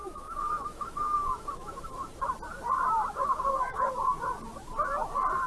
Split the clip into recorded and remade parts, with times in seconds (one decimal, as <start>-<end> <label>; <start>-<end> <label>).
0.0-1.8 remade; 1.8-3.2 recorded; 3.2-3.9 remade; 3.9-5.5 recorded